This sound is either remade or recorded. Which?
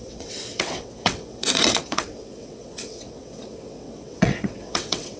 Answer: remade